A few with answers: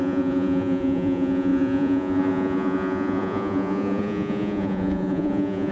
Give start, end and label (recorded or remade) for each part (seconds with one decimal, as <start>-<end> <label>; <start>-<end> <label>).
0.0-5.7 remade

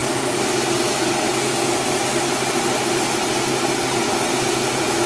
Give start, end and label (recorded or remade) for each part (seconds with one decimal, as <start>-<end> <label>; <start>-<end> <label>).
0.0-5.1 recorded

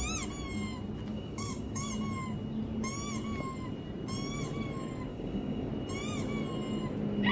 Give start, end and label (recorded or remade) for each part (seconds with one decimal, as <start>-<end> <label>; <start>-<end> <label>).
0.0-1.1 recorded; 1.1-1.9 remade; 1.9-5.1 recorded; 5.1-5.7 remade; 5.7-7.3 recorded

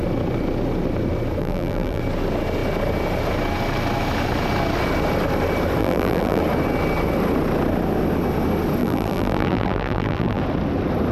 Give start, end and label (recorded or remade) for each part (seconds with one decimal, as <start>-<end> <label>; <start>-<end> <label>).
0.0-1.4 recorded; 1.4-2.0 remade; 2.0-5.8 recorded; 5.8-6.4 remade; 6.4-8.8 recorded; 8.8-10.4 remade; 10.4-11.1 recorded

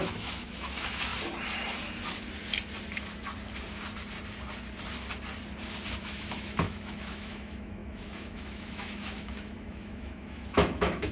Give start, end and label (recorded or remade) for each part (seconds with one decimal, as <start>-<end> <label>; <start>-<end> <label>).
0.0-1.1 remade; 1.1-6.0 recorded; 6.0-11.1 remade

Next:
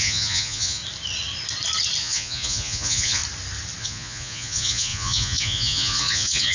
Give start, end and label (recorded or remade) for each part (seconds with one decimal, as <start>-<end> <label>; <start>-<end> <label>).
0.0-0.8 remade; 0.8-2.0 recorded; 2.0-3.2 remade; 3.2-3.8 recorded; 3.8-6.5 remade

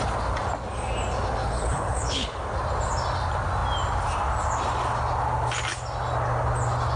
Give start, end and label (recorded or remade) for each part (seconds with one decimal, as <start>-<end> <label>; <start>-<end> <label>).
0.0-1.4 recorded; 1.4-2.4 remade; 2.4-7.0 recorded